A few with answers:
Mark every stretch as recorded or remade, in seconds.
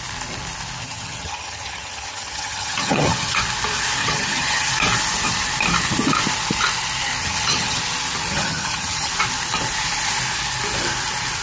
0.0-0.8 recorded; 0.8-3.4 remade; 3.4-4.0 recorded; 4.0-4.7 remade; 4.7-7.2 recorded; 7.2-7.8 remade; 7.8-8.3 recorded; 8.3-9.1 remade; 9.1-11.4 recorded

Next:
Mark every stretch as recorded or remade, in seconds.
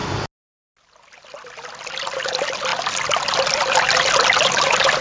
0.0-5.0 recorded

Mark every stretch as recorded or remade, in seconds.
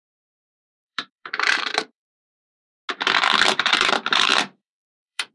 0.0-2.1 remade; 2.1-3.7 recorded; 3.7-5.3 remade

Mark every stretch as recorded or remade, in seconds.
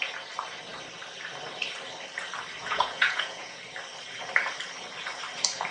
0.0-2.6 recorded; 2.6-3.6 remade; 3.6-5.7 recorded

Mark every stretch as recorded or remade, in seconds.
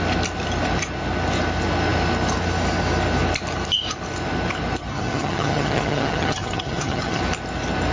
0.0-4.8 recorded; 4.8-7.2 remade; 7.2-7.9 recorded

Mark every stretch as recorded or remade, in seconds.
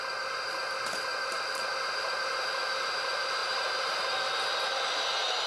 0.0-3.4 recorded; 3.4-4.0 remade; 4.0-5.5 recorded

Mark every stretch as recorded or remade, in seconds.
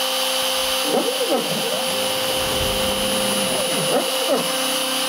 0.0-5.1 recorded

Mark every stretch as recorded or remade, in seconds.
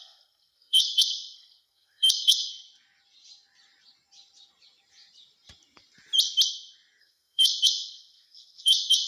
0.0-2.5 remade; 2.5-7.0 recorded; 7.0-9.1 remade